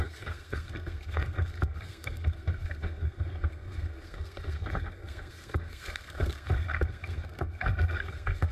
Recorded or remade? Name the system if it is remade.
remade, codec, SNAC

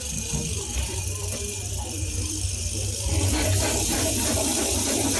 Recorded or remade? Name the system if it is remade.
remade, vocoder, BigVGAN v2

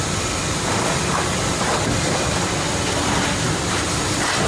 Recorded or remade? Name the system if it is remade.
remade, vocoder, BigVGAN v2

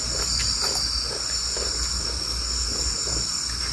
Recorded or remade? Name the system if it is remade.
recorded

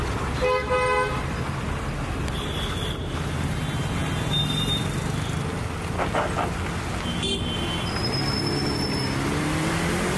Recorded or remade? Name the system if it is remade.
recorded